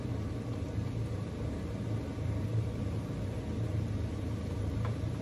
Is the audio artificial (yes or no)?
yes